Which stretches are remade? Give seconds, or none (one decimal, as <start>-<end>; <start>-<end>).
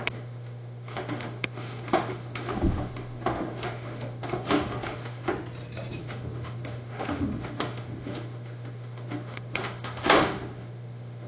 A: 0.0-5.4; 6.0-11.3